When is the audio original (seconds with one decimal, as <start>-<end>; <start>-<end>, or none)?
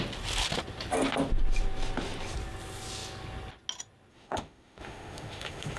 0.0-4.1